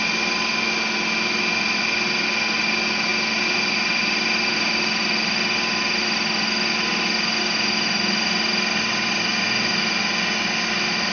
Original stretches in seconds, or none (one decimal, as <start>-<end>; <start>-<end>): 0.0-11.1